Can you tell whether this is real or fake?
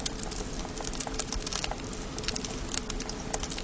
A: real